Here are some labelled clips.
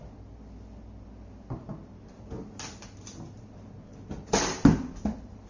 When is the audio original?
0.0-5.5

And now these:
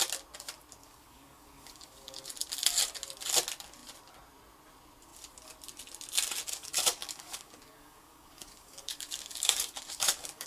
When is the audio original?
0.0-0.8; 2.3-6.5

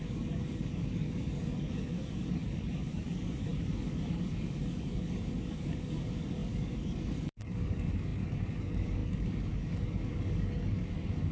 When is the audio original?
none

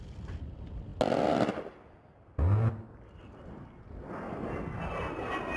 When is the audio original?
0.0-5.6

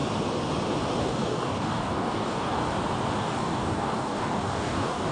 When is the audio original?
0.0-1.0; 2.6-3.2